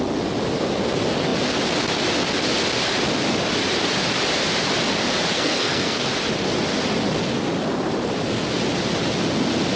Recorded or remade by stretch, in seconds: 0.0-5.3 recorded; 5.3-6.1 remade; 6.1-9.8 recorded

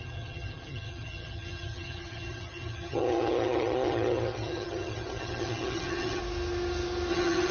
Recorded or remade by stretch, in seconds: 0.0-6.2 remade; 6.2-7.1 recorded; 7.1-7.5 remade

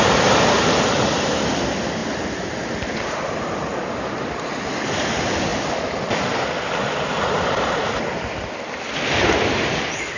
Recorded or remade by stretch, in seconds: 0.0-10.2 recorded

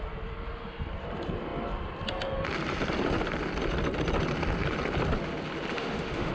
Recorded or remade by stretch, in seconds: 0.0-5.7 recorded; 5.7-6.3 remade

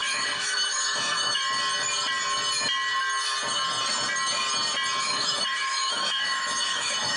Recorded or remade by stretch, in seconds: 0.0-1.4 remade; 1.4-5.0 recorded; 5.0-7.2 remade

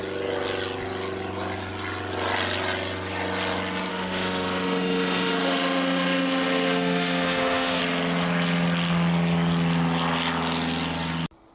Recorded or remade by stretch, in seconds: 0.0-3.9 recorded; 3.9-7.8 remade; 7.8-11.5 recorded